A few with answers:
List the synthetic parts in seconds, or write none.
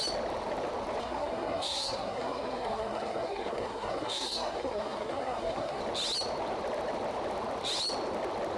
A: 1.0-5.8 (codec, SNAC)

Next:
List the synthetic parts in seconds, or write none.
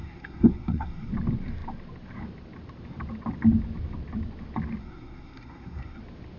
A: 0.0-1.1 (codec, SNAC); 4.8-6.0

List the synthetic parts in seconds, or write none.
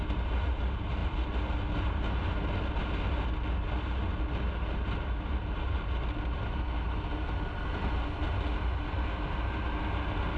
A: none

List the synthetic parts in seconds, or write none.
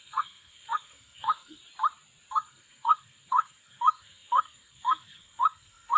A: 0.0-1.6 (codec, SNAC); 2.3-6.0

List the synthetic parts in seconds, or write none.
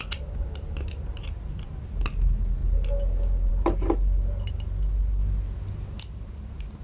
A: none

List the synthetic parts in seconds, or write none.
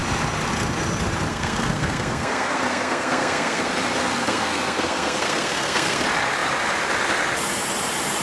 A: 1.3-3.7 (codec, SNAC); 4.2-6.0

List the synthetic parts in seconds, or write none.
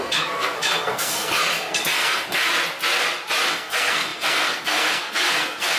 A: 0.0-2.5 (codec, SNAC); 3.5-5.8